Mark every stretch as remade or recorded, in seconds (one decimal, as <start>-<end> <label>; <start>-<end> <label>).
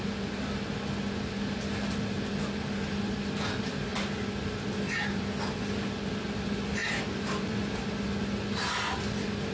0.0-6.8 recorded; 6.8-7.9 remade; 7.9-9.5 recorded